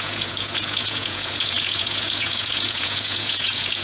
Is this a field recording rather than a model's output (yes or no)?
no